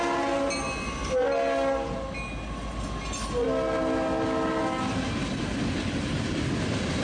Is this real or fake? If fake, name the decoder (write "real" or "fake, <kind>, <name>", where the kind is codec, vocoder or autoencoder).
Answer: real